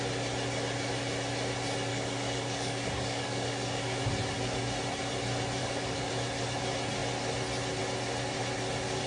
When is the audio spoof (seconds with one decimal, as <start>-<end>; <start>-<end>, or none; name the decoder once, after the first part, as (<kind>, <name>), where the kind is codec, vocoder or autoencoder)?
1.9-4.0 (codec, DAC); 5.6-6.1